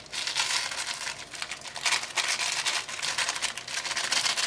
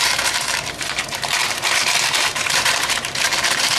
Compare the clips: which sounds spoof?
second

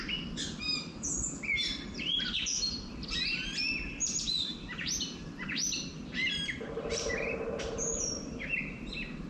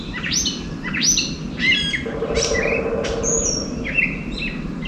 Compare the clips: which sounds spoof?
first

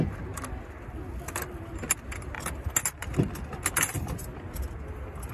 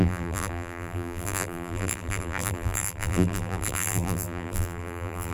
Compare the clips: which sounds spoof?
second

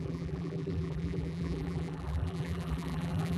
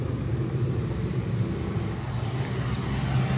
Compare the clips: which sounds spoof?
first